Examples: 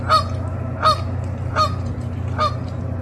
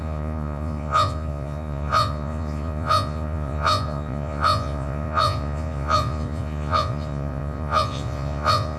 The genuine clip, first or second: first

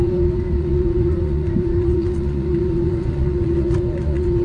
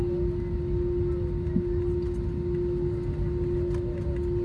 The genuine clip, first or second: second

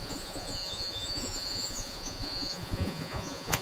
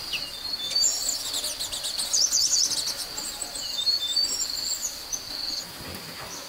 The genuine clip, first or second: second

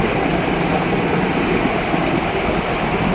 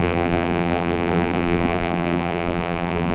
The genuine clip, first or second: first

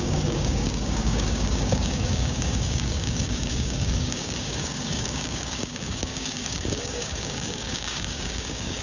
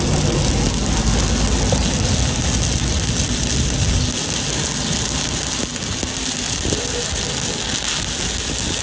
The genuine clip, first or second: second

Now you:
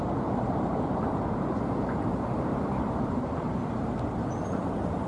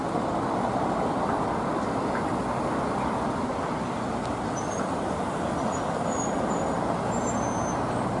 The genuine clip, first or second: second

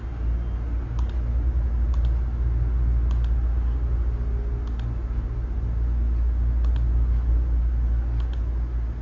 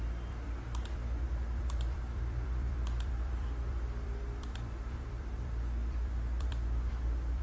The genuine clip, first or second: first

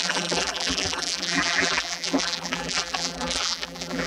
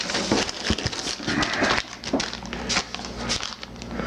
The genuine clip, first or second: second